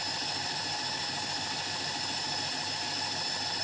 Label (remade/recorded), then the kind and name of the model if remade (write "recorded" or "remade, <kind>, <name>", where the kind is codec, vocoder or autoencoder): recorded